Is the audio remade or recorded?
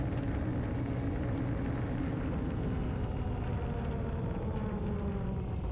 recorded